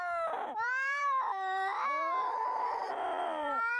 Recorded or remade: remade